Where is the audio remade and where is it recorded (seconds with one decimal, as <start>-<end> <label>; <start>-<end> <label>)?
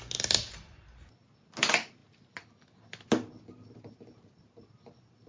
0.0-5.3 recorded